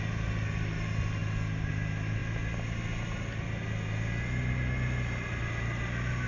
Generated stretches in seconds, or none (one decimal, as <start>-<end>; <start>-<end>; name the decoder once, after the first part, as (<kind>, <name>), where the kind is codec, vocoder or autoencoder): none